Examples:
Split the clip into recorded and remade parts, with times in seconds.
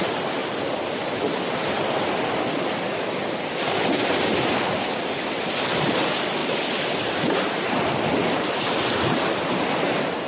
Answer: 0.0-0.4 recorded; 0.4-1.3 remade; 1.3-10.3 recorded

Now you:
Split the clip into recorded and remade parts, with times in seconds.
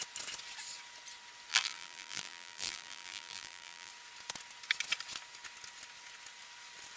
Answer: 0.0-1.5 recorded; 1.5-3.9 remade; 3.9-7.0 recorded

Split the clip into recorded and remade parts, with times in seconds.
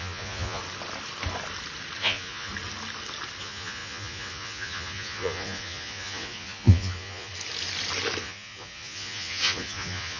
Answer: 0.0-0.6 remade; 0.6-2.0 recorded; 2.0-2.5 remade; 2.5-3.4 recorded; 3.4-7.3 remade; 7.3-8.2 recorded; 8.2-10.2 remade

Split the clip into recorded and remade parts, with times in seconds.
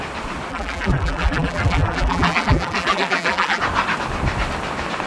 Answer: 0.0-0.5 recorded; 0.5-3.6 remade; 3.6-5.1 recorded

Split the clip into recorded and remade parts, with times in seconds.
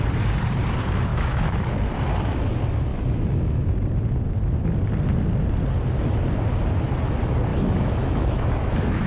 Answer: 0.0-1.1 recorded; 1.1-1.7 remade; 1.7-2.9 recorded; 2.9-3.7 remade; 3.7-7.5 recorded; 7.5-9.1 remade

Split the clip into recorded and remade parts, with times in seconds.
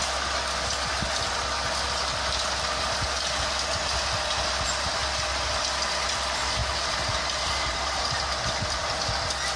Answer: 0.0-9.6 recorded